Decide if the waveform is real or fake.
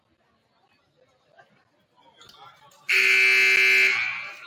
real